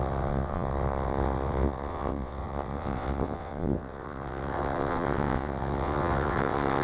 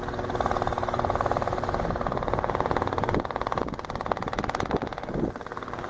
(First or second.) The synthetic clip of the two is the first